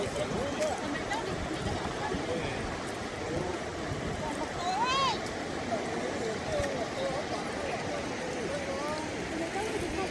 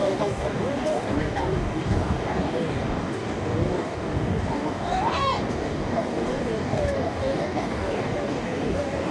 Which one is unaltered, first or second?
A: first